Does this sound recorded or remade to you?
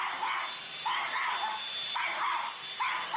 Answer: recorded